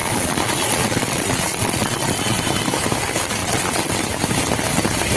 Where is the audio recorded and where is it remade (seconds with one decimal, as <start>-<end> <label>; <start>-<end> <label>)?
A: 0.0-2.4 remade; 2.4-3.4 recorded; 3.4-4.0 remade; 4.0-5.2 recorded